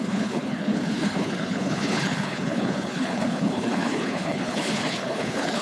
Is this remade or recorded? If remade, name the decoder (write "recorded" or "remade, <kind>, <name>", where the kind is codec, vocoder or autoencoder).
remade, codec, HILCodec